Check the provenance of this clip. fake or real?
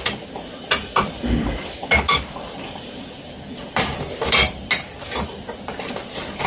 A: real